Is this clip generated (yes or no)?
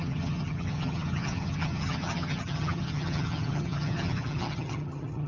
yes